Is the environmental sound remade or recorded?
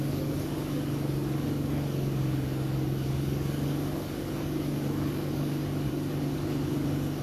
remade